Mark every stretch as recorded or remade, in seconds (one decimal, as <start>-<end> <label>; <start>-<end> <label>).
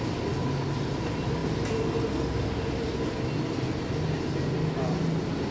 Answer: 0.0-5.5 recorded